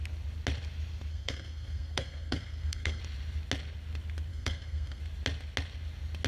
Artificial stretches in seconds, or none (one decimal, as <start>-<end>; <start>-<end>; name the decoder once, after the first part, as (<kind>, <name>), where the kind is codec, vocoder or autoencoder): 1.1-3.0 (codec, SNAC); 4.3-5.0